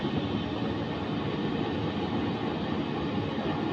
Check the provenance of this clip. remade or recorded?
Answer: recorded